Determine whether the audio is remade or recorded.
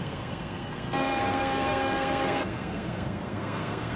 remade